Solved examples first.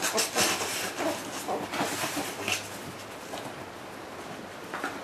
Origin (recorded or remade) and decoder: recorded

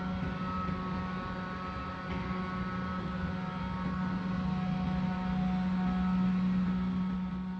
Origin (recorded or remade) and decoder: recorded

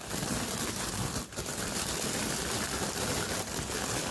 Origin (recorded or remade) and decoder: recorded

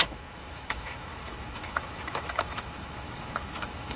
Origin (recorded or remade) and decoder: remade, autoencoder, DAC-VAE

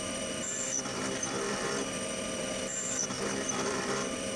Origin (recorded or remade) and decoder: remade, vocoder, BigVGAN v2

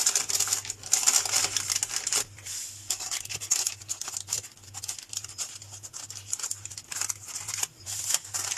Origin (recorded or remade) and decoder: recorded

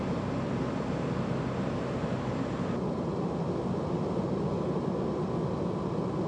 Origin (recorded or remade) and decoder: recorded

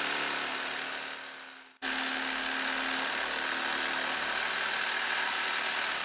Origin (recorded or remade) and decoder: recorded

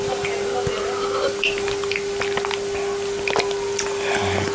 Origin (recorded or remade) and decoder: recorded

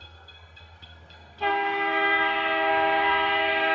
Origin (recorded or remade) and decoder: remade, codec, SNAC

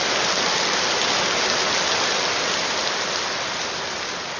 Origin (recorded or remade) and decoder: recorded